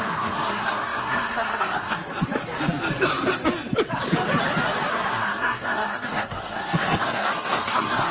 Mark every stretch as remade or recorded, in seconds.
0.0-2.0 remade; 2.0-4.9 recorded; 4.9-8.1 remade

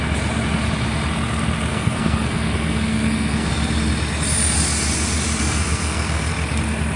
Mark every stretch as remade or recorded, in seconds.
0.0-1.7 recorded; 1.7-3.5 remade; 3.5-5.4 recorded; 5.4-6.3 remade; 6.3-7.0 recorded

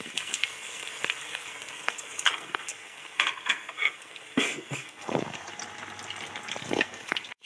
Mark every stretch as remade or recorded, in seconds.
0.0-5.5 remade; 5.5-6.6 recorded; 6.6-7.5 remade

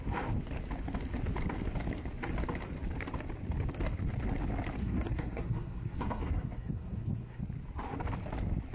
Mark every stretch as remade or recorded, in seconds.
0.0-4.8 recorded; 4.8-7.4 remade; 7.4-8.7 recorded

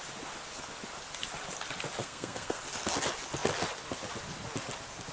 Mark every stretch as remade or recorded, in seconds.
0.0-2.0 recorded; 2.0-2.6 remade; 2.6-5.1 recorded

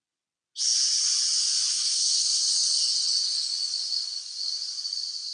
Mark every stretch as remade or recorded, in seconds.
0.0-1.7 recorded; 1.7-2.4 remade; 2.4-5.3 recorded

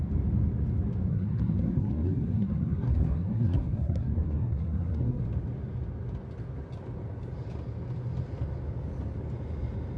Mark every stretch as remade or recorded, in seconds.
0.0-1.1 recorded; 1.1-5.2 remade; 5.2-10.0 recorded

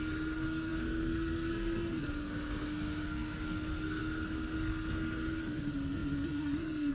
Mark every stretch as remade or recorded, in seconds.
0.0-6.9 remade